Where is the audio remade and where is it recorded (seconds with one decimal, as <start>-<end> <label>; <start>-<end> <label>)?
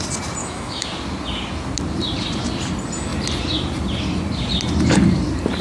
0.0-0.4 recorded; 0.4-0.9 remade; 0.9-5.6 recorded